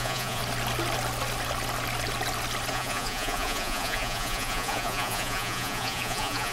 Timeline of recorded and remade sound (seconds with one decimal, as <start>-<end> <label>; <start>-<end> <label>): 0.0-0.4 remade; 0.4-2.7 recorded; 2.7-6.5 remade